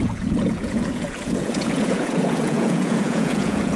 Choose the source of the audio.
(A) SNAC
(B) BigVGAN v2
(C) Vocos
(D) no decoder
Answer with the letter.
C